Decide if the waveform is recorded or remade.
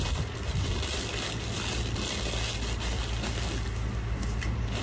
recorded